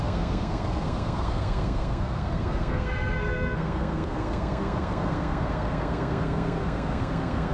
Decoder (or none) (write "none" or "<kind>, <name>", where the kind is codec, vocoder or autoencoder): codec, SNAC